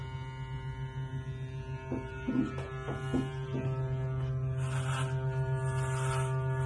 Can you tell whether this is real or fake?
real